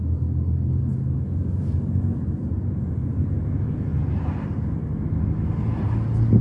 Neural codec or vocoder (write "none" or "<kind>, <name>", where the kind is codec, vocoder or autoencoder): none